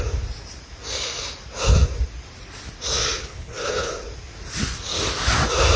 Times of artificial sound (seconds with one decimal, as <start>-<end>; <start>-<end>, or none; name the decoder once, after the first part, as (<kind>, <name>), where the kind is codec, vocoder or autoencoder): 3.2-3.9 (codec, HILCodec)